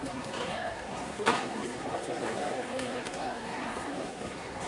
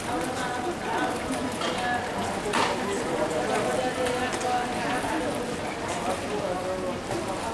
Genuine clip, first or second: second